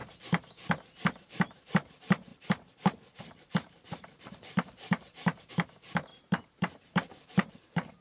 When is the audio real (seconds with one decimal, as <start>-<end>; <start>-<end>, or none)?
0.0-1.4; 6.1-6.6